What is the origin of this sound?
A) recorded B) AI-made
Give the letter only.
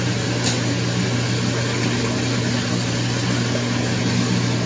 A